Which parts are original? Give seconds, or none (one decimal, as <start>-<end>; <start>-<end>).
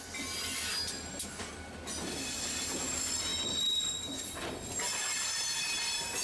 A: 0.0-6.2